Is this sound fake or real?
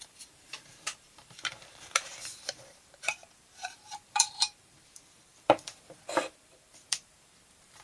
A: fake